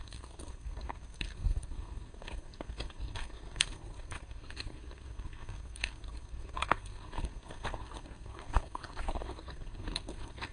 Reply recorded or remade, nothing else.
remade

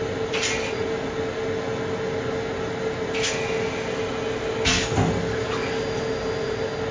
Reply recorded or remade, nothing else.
recorded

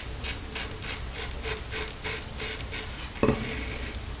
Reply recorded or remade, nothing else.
recorded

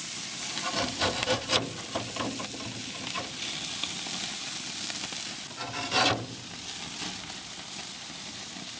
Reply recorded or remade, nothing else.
recorded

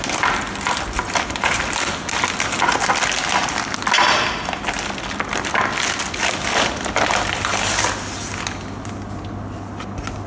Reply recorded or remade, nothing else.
recorded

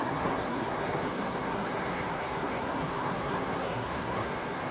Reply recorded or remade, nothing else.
remade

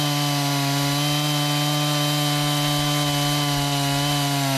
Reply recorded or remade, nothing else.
recorded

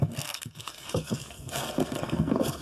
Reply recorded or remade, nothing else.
remade